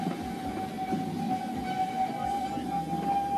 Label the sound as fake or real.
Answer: real